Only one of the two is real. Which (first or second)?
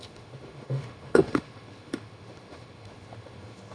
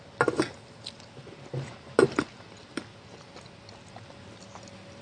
second